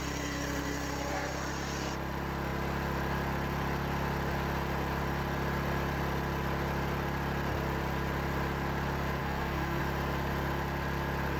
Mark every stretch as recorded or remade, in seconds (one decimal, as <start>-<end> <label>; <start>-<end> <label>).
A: 0.0-9.2 recorded; 9.2-9.8 remade; 9.8-11.4 recorded